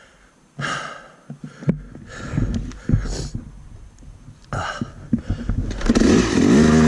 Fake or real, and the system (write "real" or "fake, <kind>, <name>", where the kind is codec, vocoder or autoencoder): real